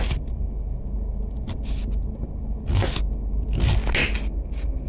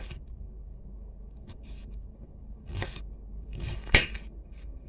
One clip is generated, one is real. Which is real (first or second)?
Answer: first